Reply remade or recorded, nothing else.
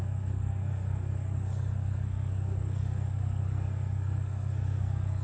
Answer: remade